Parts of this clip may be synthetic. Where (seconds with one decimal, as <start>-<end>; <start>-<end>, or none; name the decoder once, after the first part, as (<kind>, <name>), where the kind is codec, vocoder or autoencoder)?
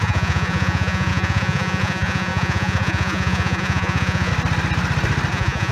0.0-4.3 (vocoder, Vocos); 5.3-5.7